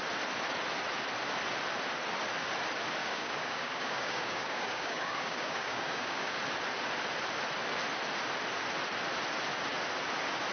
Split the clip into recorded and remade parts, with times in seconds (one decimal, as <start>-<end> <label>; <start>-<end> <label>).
0.0-3.0 recorded; 3.0-6.4 remade; 6.4-10.5 recorded